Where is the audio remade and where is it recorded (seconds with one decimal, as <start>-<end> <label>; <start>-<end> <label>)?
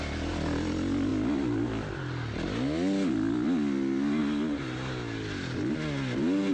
0.0-6.5 recorded